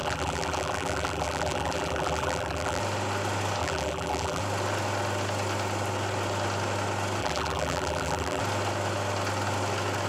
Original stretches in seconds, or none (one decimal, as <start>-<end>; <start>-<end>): 2.8-3.6; 4.4-7.2; 8.4-10.1